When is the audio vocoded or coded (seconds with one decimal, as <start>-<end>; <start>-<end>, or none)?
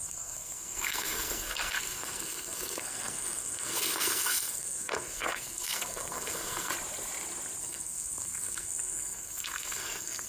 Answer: 0.0-6.7; 7.6-10.3